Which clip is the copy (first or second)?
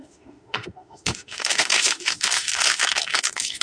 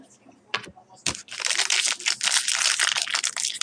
first